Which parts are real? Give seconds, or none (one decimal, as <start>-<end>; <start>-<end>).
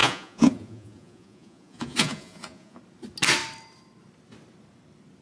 2.8-5.2